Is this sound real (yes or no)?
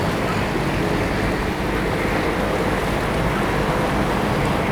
yes